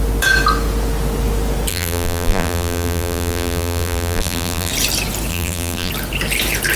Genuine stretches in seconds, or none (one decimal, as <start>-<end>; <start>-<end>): 0.0-1.7; 4.7-5.3; 5.9-6.8